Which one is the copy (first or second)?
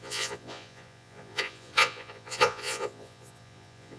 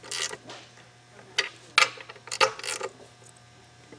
first